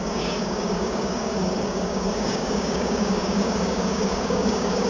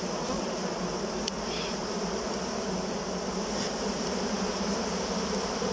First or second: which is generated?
first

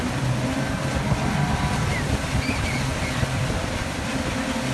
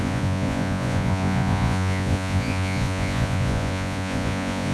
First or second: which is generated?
second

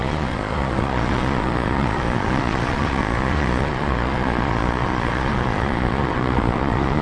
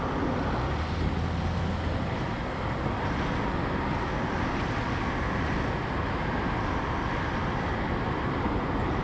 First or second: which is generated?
first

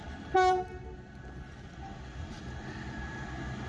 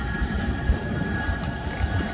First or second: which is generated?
second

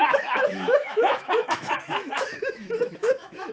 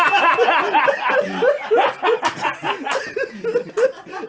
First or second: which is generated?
first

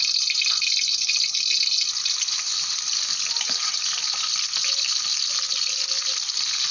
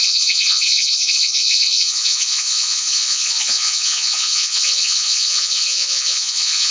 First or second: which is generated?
second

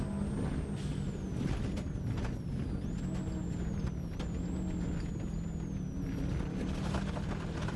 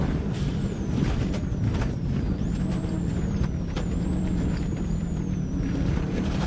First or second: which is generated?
second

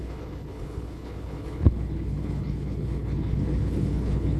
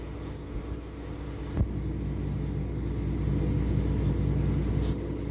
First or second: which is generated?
first